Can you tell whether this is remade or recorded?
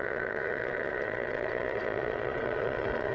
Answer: remade